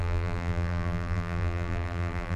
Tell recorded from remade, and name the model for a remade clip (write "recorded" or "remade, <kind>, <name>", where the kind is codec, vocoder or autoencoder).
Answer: remade, vocoder, BigVGAN v2